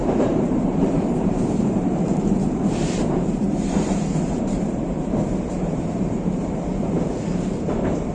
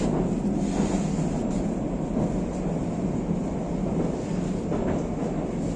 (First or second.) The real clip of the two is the second